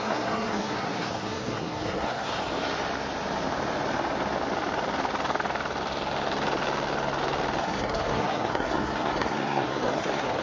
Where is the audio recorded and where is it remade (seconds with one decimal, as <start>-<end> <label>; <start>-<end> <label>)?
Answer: 0.0-2.4 remade; 2.4-7.6 recorded; 7.6-10.4 remade